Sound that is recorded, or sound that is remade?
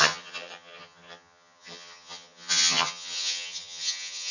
remade